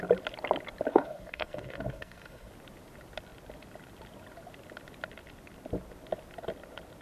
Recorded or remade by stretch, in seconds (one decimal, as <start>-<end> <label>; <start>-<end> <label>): 0.0-0.9 recorded; 0.9-2.5 remade; 2.5-7.0 recorded